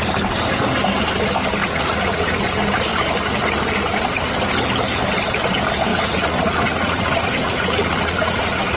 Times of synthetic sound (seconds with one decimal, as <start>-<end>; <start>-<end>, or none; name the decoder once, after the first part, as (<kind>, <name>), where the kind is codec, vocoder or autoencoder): 1.6-2.5 (vocoder, Vocos); 5.9-8.8